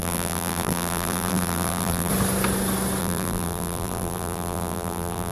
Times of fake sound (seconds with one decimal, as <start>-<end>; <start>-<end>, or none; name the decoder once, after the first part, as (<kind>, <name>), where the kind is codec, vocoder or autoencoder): 0.0-2.1 (vocoder, BigVGAN v2); 3.0-5.3